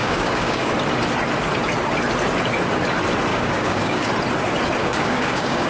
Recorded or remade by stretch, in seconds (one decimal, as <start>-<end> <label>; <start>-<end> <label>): 0.0-0.7 remade; 0.7-3.3 recorded; 3.3-4.1 remade; 4.1-4.8 recorded; 4.8-5.7 remade